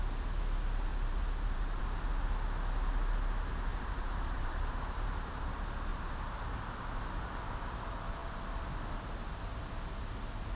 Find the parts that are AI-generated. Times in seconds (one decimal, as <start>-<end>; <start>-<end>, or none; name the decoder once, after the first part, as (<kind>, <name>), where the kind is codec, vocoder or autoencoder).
0.9-1.8 (vocoder, BigVGAN v2); 3.7-5.5; 5.9-6.5